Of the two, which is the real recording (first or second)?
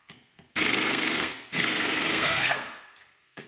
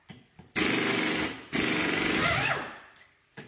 second